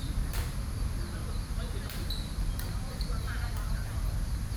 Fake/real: real